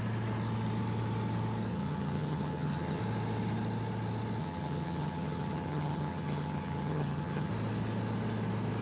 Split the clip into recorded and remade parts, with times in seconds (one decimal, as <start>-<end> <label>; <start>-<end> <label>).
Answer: 0.0-1.7 recorded; 1.7-3.0 remade; 3.0-4.4 recorded; 4.4-7.5 remade; 7.5-8.8 recorded